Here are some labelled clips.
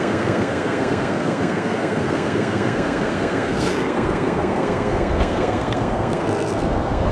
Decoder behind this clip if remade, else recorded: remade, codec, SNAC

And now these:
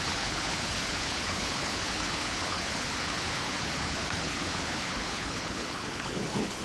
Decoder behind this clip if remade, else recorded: remade, codec, HILCodec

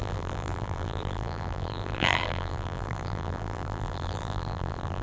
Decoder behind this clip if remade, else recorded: remade, vocoder, BigVGAN v2